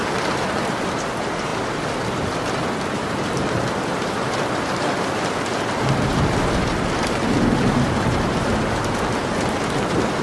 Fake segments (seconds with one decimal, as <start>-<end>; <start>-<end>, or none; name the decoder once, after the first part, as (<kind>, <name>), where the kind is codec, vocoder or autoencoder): none